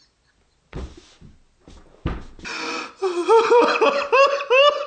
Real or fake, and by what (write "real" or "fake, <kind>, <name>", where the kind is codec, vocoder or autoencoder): real